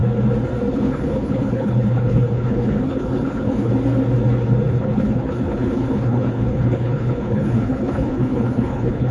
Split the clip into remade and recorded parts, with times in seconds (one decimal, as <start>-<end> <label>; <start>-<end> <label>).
0.0-0.7 recorded; 0.7-3.7 remade; 3.7-4.7 recorded; 4.7-9.1 remade